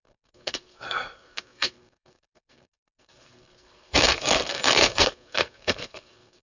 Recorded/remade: remade